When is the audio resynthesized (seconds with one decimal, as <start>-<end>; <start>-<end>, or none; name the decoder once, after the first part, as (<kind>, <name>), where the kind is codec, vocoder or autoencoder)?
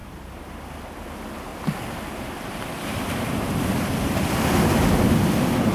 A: 0.0-0.8 (vocoder, BigVGAN v2); 1.5-4.7